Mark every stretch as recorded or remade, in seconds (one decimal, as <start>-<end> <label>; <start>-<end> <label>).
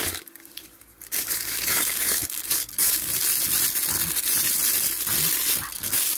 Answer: 0.0-3.1 remade; 3.1-5.7 recorded; 5.7-6.2 remade